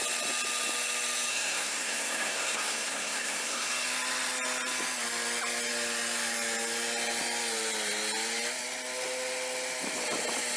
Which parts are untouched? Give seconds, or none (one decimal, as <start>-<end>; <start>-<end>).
0.0-1.3; 3.7-10.6